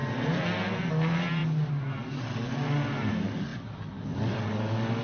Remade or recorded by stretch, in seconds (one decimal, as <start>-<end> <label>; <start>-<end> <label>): 0.0-5.0 recorded